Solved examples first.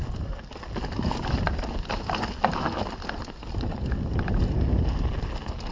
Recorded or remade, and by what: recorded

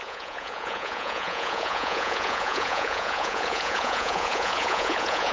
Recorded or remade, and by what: remade, vocoder, Vocos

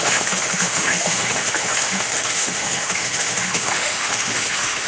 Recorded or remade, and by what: remade, autoencoder, DAC-VAE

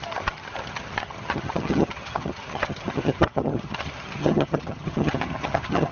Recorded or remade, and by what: remade, vocoder, HiFi-GAN